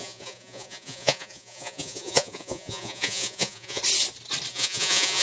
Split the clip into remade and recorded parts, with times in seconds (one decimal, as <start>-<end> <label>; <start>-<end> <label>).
0.0-3.8 remade; 3.8-4.5 recorded; 4.5-5.2 remade